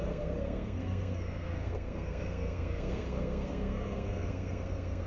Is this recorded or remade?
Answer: remade